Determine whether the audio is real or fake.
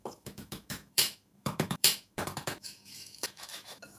fake